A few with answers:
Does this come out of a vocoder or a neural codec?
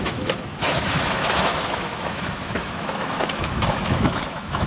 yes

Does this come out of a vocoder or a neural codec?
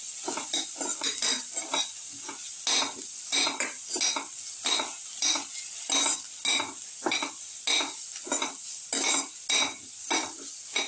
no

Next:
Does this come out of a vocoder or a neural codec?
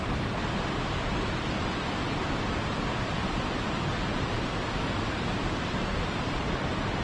no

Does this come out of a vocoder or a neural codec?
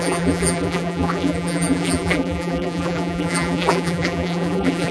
yes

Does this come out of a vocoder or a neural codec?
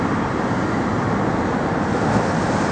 no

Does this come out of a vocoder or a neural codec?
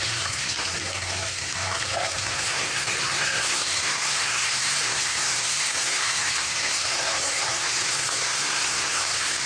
yes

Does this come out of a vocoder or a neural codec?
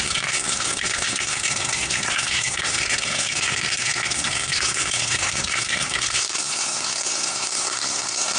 yes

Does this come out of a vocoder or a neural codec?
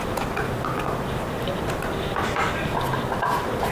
no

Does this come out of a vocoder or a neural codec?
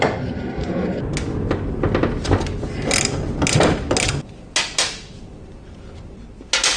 no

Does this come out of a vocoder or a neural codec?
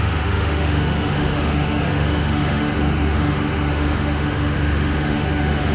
yes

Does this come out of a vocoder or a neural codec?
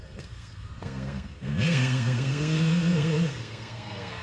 yes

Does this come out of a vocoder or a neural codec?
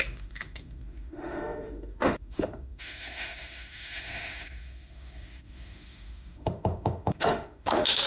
yes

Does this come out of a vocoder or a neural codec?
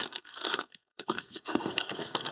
yes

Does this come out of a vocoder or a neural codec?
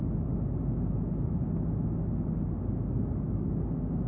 no